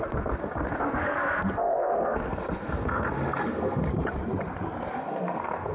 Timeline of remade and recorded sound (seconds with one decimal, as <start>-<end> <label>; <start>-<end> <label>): 0.0-3.9 remade; 3.9-4.9 recorded; 4.9-5.7 remade